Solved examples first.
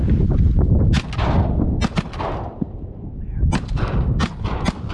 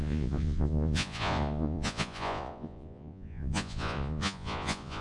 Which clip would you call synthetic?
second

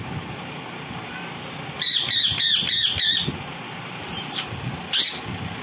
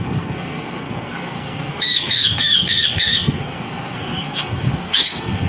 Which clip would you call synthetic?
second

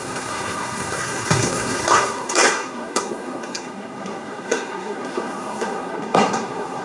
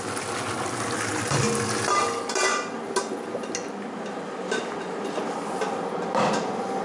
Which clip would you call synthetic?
first